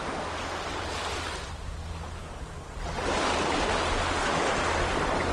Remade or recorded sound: recorded